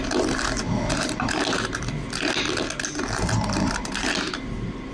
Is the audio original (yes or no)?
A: yes